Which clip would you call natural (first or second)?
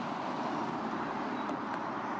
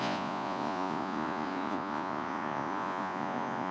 first